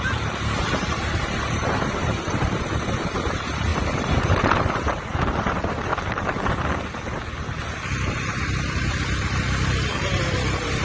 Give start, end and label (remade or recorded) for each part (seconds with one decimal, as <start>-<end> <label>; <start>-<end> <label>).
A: 0.0-3.7 remade; 3.7-4.2 recorded; 4.2-5.9 remade; 5.9-8.1 recorded; 8.1-10.8 remade